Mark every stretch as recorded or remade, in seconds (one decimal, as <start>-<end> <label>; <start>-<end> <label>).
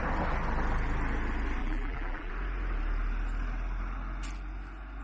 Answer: 0.0-1.6 recorded; 1.6-2.3 remade; 2.3-5.0 recorded